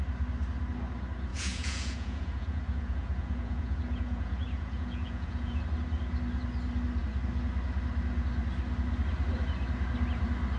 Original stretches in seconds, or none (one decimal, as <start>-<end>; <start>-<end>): 0.0-1.3; 5.6-10.6